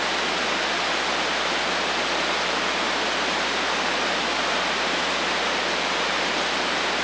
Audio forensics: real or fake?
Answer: real